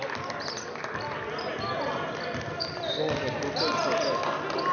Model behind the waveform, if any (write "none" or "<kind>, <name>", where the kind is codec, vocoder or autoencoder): none